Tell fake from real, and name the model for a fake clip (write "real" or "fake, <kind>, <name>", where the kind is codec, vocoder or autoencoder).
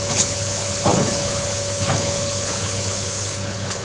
fake, codec, HILCodec